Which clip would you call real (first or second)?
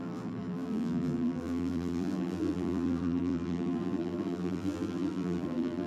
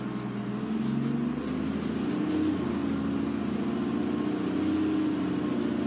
second